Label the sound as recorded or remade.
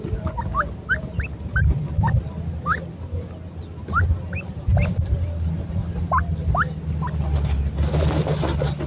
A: recorded